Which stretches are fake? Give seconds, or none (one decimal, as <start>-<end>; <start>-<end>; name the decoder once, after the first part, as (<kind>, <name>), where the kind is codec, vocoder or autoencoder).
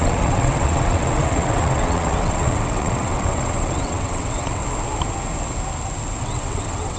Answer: 0.0-4.6 (vocoder, WaveNeXt); 6.2-7.0